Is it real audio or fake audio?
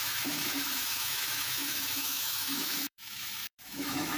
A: fake